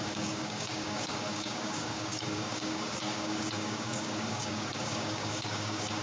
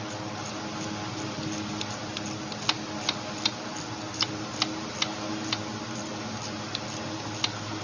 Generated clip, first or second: first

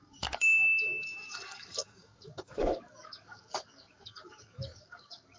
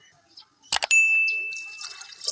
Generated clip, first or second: first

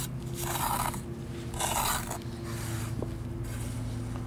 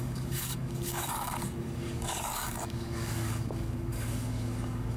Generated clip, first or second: second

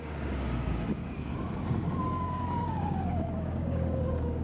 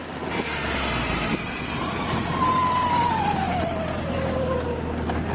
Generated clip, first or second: first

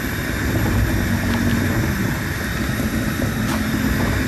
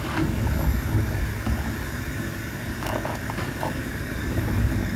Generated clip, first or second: second